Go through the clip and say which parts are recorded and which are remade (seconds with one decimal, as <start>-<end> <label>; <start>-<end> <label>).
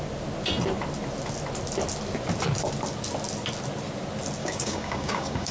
0.0-4.4 recorded; 4.4-5.5 remade